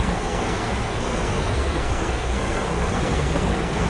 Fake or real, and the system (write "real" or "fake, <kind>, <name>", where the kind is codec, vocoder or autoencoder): fake, codec, SNAC